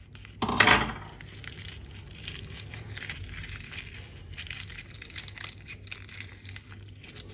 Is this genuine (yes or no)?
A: yes